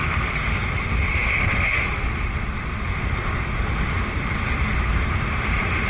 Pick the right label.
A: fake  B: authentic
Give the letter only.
B